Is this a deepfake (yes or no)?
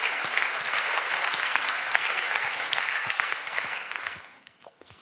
yes